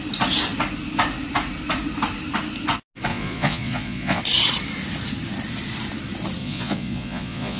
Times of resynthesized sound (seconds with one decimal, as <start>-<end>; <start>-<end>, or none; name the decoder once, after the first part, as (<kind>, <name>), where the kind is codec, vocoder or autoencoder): 3.1-4.2 (vocoder, Vocos); 6.4-7.6

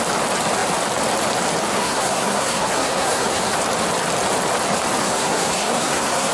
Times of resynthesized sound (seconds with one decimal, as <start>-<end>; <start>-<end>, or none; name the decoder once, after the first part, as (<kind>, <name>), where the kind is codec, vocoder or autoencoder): 1.7-3.5 (codec, SNAC); 5.0-6.3

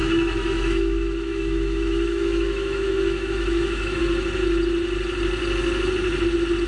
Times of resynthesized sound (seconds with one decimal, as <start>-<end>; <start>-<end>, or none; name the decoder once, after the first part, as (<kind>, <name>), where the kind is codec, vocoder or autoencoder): 0.0-4.0 (autoencoder, DAC-VAE)

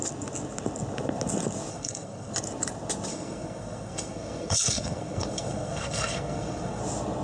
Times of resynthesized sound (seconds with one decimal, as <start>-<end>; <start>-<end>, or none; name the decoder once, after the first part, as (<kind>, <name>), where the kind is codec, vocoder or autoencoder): 1.7-2.3 (codec, SNAC); 3.1-6.8